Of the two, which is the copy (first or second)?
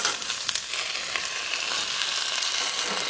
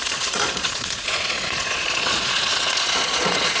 second